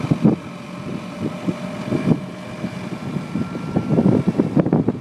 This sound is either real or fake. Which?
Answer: real